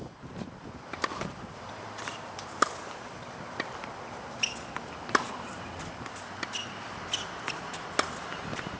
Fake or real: real